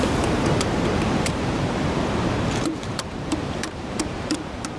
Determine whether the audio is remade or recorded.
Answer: remade